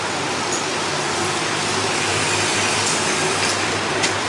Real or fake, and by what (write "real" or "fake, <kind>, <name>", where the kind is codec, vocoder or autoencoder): fake, vocoder, BigVGAN v2